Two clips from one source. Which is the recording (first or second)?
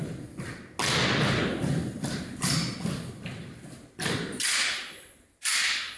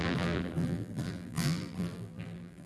first